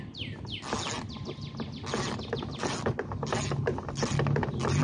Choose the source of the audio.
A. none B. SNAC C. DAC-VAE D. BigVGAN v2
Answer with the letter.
A